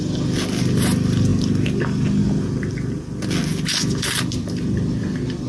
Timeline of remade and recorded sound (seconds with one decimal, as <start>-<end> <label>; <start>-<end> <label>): 0.0-5.5 recorded